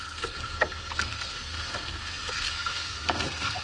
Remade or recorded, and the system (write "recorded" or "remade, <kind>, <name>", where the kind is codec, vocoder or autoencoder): remade, codec, SNAC